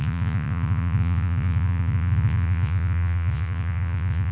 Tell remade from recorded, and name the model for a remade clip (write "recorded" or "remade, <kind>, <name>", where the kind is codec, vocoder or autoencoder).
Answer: remade, vocoder, Vocos